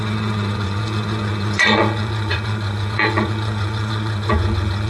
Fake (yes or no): yes